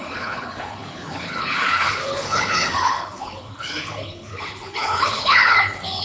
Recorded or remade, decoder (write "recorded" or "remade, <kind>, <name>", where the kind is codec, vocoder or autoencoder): remade, codec, HILCodec